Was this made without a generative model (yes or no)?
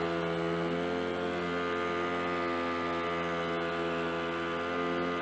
yes